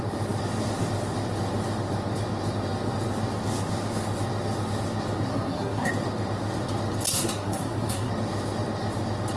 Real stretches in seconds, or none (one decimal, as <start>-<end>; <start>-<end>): 0.0-5.3; 5.9-7.1; 8.1-9.4